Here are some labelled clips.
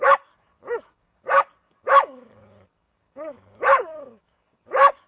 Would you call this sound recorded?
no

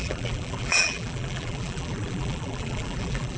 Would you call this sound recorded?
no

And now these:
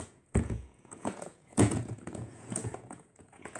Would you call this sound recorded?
no